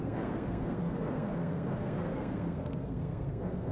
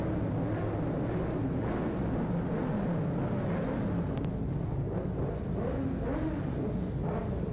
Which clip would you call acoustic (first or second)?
second